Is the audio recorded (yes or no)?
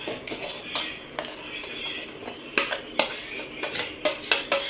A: yes